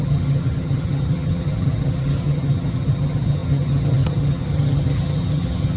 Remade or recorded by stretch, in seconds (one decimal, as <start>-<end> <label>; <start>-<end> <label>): 0.0-5.8 remade

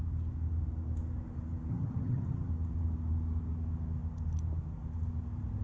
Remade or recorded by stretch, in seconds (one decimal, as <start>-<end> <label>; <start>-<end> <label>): 0.0-1.7 recorded; 1.7-2.5 remade; 2.5-5.6 recorded

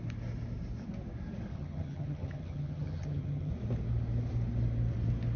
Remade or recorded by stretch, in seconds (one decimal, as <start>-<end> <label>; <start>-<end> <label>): 0.0-1.5 recorded; 1.5-3.5 remade; 3.5-5.4 recorded

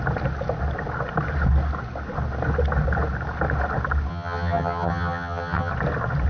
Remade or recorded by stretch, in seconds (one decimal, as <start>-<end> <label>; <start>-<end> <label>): 0.0-4.1 recorded; 4.1-5.7 remade; 5.7-6.3 recorded

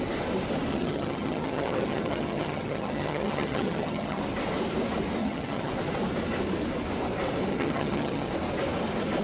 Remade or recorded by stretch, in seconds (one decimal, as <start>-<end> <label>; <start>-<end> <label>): 0.0-0.7 recorded; 0.7-4.2 remade; 4.2-5.2 recorded; 5.2-5.7 remade; 5.7-7.5 recorded; 7.5-8.3 remade; 8.3-9.2 recorded

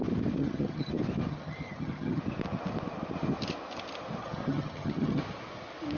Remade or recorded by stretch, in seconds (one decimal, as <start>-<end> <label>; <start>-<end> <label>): 0.0-0.4 recorded; 0.4-0.9 remade; 0.9-1.3 recorded; 1.3-2.2 remade; 2.2-4.2 recorded; 4.2-5.2 remade; 5.2-6.0 recorded

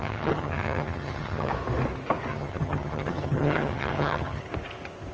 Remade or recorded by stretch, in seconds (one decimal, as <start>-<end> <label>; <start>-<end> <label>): 0.0-1.5 remade; 1.5-2.3 recorded; 2.3-4.4 remade; 4.4-5.1 recorded